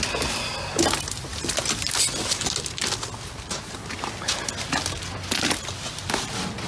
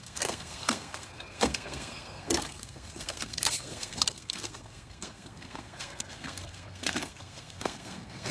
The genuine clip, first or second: first